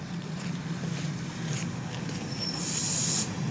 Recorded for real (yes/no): yes